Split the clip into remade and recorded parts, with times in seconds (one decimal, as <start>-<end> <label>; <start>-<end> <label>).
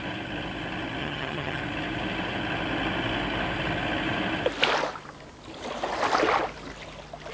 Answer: 0.0-1.0 recorded; 1.0-1.6 remade; 1.6-7.3 recorded